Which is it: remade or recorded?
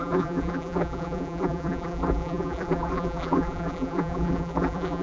remade